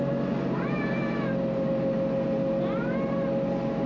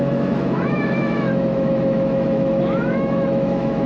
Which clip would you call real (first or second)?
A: first